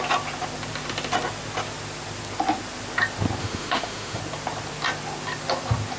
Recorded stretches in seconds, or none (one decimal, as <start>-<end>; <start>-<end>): 0.0-3.4; 4.2-6.0